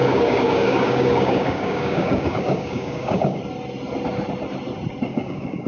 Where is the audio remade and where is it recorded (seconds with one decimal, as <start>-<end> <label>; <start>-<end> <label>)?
0.0-3.4 remade; 3.4-5.1 recorded; 5.1-5.7 remade